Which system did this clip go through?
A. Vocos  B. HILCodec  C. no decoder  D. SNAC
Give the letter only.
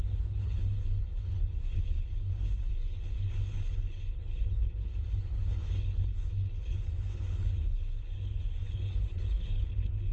B